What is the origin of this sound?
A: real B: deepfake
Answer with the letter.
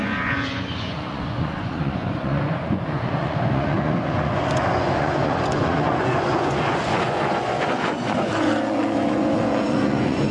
B